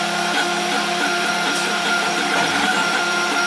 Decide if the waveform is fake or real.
fake